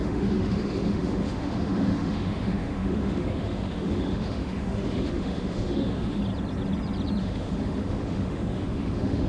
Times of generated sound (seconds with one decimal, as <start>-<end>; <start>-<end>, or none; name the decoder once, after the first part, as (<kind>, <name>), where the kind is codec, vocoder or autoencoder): 0.0-6.2 (autoencoder, DAC-VAE); 7.2-9.3